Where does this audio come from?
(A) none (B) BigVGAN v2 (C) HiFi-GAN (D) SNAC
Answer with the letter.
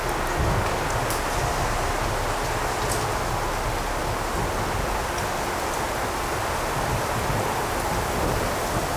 A